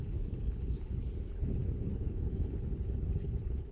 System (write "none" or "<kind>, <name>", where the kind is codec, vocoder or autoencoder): codec, HILCodec